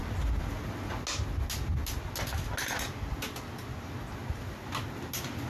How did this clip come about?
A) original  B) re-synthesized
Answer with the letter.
A